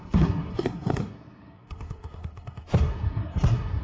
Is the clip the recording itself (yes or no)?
no